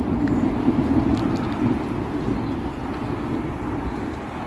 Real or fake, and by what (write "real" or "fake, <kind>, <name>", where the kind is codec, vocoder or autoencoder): real